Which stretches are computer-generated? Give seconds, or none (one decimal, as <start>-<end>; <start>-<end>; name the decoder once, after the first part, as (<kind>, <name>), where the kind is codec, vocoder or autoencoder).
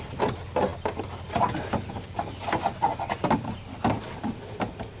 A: none